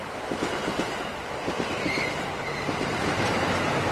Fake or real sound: fake